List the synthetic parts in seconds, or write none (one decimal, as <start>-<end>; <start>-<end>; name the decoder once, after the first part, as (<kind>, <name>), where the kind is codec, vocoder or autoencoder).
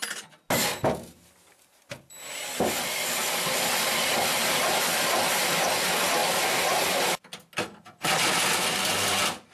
none